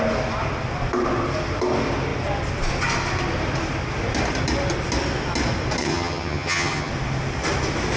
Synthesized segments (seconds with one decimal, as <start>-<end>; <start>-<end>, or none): 5.8-6.9